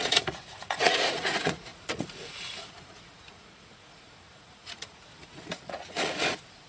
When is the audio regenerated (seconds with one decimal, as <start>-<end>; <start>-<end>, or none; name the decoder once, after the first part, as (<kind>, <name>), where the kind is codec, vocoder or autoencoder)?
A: 0.0-6.7 (vocoder, Vocos)